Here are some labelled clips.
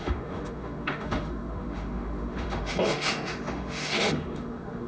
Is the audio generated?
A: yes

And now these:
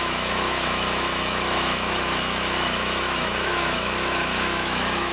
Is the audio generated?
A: yes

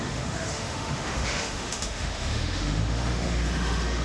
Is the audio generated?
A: yes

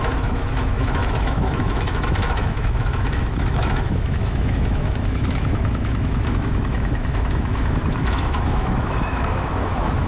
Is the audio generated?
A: yes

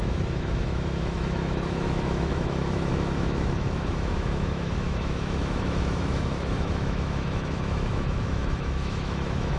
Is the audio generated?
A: yes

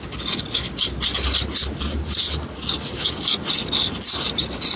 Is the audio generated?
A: no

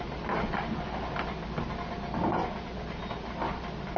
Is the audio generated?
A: no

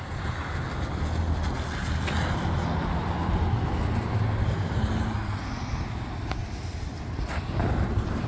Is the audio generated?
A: no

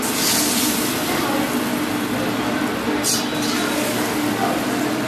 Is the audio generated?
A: no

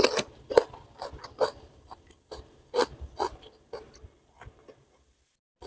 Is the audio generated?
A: no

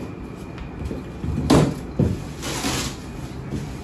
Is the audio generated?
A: no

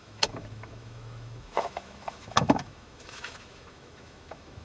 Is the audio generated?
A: yes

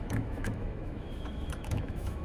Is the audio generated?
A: yes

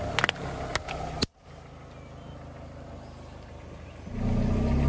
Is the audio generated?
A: no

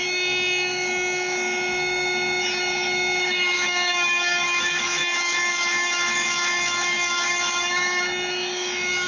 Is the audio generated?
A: yes